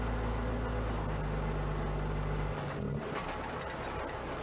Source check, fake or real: real